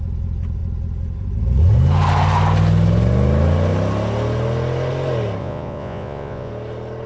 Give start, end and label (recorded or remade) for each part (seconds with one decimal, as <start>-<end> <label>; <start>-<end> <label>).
0.0-5.4 recorded; 5.4-6.5 remade; 6.5-7.1 recorded